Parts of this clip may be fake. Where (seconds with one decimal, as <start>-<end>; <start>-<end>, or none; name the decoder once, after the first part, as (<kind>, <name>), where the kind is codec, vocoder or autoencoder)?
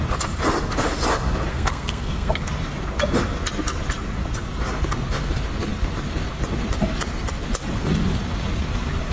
1.5-2.5 (codec, SNAC)